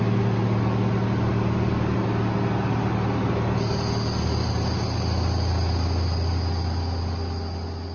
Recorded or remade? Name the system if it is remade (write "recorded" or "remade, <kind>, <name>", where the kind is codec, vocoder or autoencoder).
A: recorded